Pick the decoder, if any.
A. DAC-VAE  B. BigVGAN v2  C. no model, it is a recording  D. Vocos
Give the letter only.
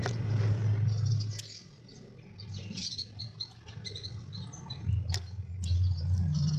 B